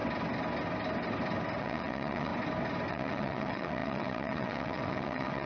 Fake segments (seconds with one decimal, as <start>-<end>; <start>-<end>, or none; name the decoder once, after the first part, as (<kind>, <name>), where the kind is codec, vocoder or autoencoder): 1.6-2.3 (vocoder, WaveNeXt); 2.9-5.5